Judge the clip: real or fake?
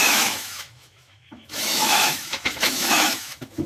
fake